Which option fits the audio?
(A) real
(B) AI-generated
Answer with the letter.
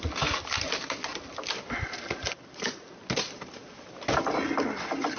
A